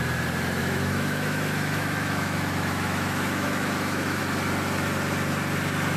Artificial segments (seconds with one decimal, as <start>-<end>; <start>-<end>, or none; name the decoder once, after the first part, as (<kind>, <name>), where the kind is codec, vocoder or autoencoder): 0.6-4.2 (autoencoder, DAC-VAE)